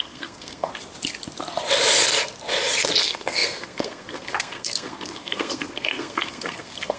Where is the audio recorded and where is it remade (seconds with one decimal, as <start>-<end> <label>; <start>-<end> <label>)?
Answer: 0.0-0.7 remade; 0.7-3.0 recorded; 3.0-7.0 remade